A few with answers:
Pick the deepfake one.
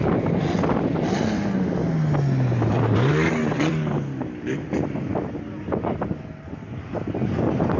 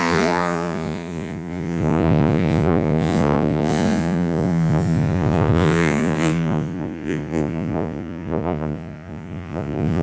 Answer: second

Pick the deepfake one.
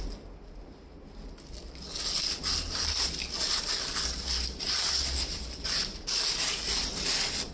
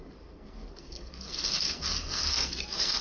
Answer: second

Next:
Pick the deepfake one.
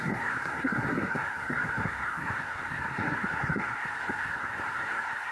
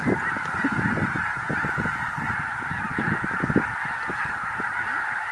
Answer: first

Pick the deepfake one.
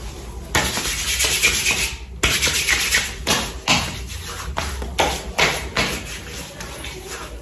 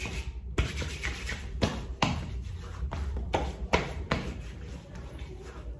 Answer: second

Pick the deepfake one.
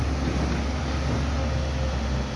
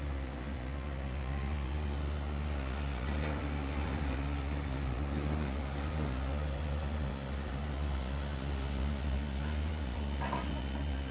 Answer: second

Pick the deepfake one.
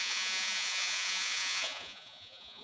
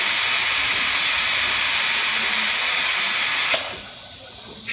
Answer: first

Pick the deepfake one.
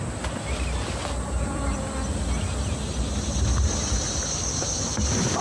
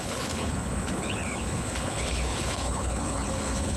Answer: second